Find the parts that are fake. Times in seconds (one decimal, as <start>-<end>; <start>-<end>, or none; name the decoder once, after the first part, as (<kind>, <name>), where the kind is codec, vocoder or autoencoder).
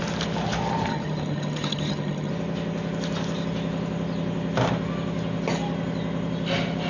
0.9-2.3 (vocoder, HiFi-GAN)